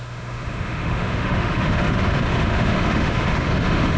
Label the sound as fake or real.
fake